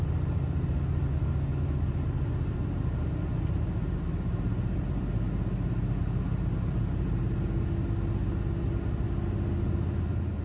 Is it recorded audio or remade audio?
recorded